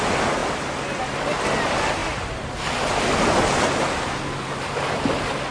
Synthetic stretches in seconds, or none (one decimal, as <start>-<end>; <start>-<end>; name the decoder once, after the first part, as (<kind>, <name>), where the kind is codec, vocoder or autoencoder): none